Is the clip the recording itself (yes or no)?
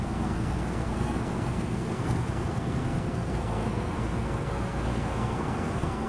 no